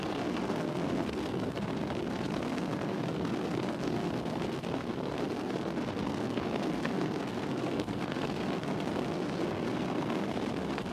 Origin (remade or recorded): remade